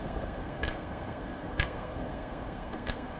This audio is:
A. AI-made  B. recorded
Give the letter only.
A